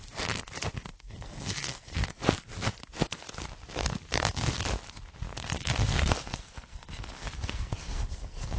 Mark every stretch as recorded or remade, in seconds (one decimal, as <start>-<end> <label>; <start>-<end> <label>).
0.0-0.9 recorded; 0.9-2.2 remade; 2.2-4.0 recorded; 4.0-4.5 remade; 4.5-5.3 recorded; 5.3-8.6 remade

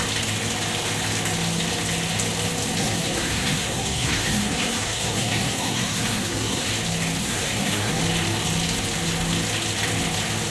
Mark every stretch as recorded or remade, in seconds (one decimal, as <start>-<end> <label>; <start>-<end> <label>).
0.0-2.8 recorded; 2.8-6.7 remade; 6.7-7.2 recorded; 7.2-8.0 remade; 8.0-10.5 recorded